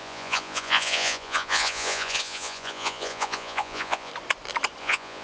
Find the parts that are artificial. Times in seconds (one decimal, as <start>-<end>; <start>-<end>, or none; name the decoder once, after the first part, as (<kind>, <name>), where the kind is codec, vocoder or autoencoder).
0.0-4.1 (vocoder, Vocos); 4.8-5.2